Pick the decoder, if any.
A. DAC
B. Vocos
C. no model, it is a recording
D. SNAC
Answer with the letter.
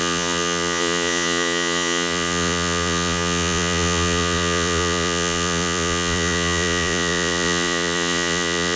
B